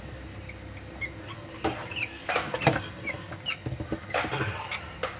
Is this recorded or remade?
recorded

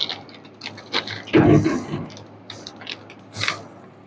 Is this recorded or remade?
recorded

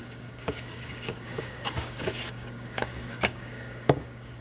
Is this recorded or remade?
remade